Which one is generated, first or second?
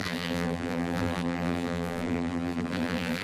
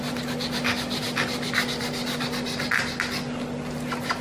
first